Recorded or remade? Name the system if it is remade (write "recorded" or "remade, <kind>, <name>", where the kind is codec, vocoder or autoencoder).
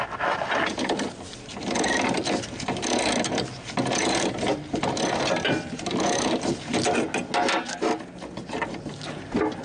recorded